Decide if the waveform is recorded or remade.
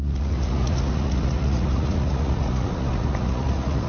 remade